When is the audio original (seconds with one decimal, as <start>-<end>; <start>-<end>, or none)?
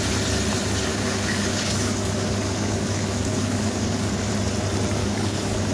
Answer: 0.0-0.9; 4.3-5.0